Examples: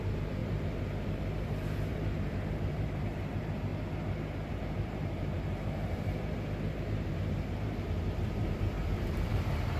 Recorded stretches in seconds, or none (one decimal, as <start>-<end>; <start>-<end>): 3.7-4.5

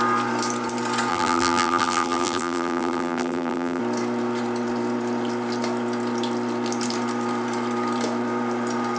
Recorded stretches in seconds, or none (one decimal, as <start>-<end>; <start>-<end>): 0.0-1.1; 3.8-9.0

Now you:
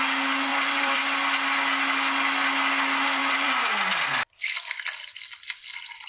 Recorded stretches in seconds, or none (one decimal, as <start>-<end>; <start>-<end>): 0.0-0.5; 1.0-3.2; 4.8-6.1

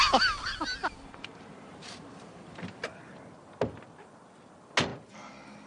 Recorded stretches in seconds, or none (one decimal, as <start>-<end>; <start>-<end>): 0.0-0.8; 2.6-5.7

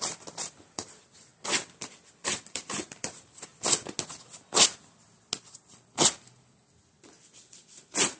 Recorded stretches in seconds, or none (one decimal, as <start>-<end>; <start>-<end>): 1.3-1.9; 3.5-5.5